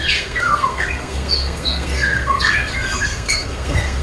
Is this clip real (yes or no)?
no